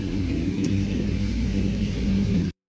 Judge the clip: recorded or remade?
remade